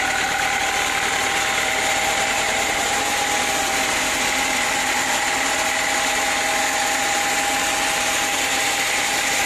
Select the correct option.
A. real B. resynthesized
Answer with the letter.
A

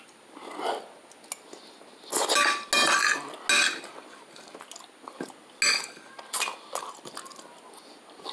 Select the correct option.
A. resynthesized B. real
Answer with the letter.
B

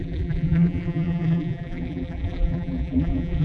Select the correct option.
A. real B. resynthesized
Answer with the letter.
B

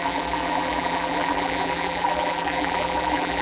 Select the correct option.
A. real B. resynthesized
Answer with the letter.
B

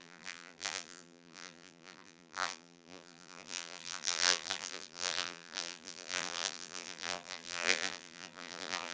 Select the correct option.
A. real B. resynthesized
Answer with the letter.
B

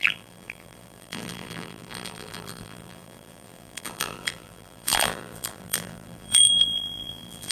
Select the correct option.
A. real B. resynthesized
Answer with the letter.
B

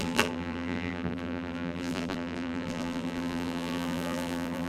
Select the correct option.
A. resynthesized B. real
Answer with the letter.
A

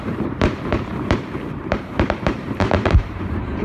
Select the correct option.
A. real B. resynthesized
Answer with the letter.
B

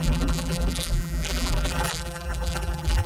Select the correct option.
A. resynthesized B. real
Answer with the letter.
A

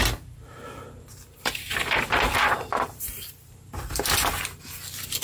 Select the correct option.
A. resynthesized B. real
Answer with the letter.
A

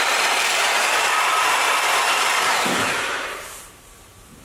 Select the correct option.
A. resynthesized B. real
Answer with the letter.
A